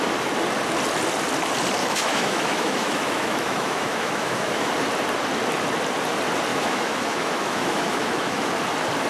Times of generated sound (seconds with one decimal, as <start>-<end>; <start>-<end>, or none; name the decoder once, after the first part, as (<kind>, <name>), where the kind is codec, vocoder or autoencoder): 1.8-4.7 (autoencoder, DAC-VAE); 6.5-8.5